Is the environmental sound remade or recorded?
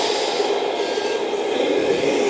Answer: recorded